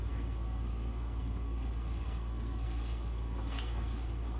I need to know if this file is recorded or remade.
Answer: remade